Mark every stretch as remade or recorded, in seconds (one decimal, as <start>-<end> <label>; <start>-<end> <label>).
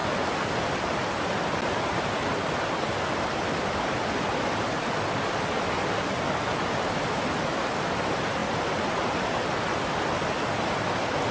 0.0-11.3 recorded